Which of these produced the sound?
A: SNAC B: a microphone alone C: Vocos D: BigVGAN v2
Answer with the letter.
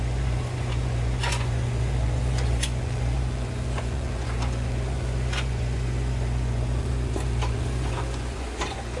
C